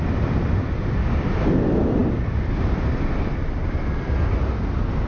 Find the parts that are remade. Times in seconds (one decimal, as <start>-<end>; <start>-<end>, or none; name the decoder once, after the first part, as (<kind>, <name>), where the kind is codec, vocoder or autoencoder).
none